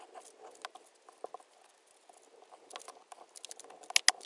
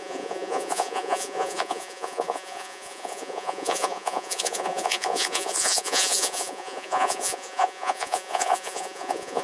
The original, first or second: first